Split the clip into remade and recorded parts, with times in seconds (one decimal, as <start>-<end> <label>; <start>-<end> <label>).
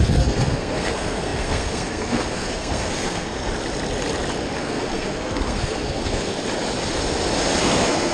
0.0-3.5 remade; 3.5-4.6 recorded; 4.6-6.3 remade; 6.3-7.6 recorded; 7.6-8.1 remade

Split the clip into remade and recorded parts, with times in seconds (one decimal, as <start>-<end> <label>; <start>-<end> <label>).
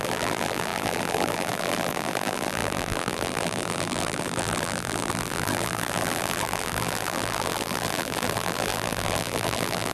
0.0-9.9 remade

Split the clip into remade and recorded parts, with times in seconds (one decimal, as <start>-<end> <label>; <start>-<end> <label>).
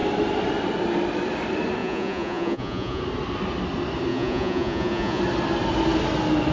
0.0-1.8 recorded; 1.8-3.0 remade; 3.0-4.1 recorded; 4.1-5.2 remade; 5.2-6.5 recorded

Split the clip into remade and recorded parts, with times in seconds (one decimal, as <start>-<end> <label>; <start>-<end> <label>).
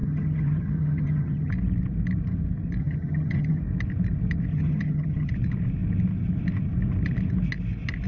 0.0-1.5 remade; 1.5-2.8 recorded; 2.8-3.6 remade; 3.6-4.5 recorded; 4.5-5.3 remade; 5.3-8.1 recorded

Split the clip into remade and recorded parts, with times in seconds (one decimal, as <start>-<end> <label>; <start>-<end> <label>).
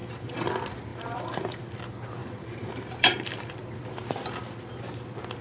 0.0-0.5 remade; 0.5-0.9 recorded; 0.9-1.7 remade; 1.7-2.2 recorded; 2.2-3.5 remade; 3.5-5.4 recorded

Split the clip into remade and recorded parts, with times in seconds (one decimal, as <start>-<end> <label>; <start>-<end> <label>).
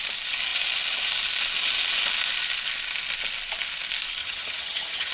0.0-4.2 recorded; 4.2-5.1 remade